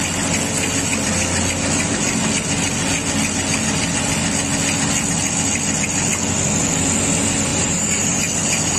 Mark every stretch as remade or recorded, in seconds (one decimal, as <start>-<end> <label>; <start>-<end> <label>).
0.0-7.5 recorded; 7.5-8.2 remade; 8.2-8.8 recorded